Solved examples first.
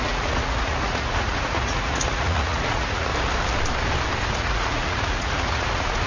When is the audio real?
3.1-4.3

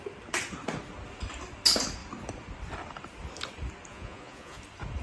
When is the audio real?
0.0-3.9; 4.6-5.0

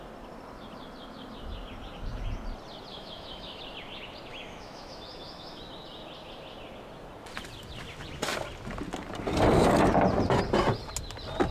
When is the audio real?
0.0-2.9; 3.6-4.3; 5.6-11.5

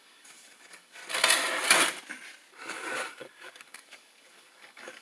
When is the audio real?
1.0-2.5

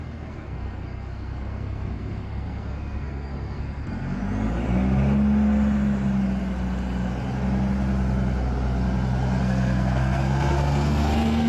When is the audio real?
4.2-9.4

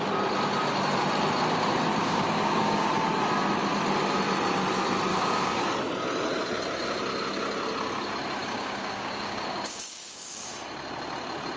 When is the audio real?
0.0-2.0; 2.9-5.1; 5.6-8.4; 10.5-11.6

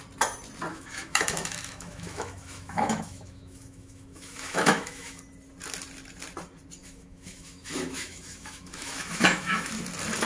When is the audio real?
0.0-0.7; 5.2-6.8; 9.7-10.3

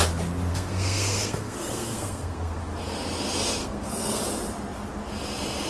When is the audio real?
0.0-0.5; 2.6-3.6; 4.2-5.7